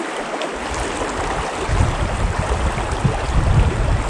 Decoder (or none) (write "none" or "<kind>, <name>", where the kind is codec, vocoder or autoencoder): none